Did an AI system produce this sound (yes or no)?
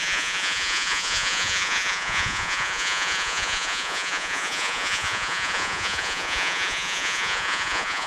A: yes